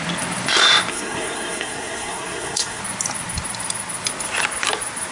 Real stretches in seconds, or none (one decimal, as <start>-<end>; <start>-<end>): 0.0-0.9; 2.8-5.1